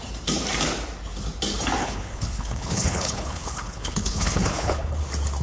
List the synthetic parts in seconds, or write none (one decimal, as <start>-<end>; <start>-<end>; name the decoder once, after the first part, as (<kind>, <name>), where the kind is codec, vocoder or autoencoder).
1.8-5.0 (codec, HILCodec)